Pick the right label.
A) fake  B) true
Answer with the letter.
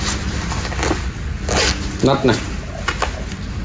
B